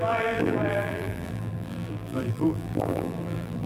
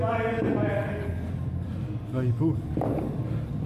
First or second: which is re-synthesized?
first